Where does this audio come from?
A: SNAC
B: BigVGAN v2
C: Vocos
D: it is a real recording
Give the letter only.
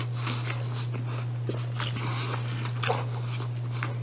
D